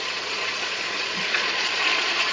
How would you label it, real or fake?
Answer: fake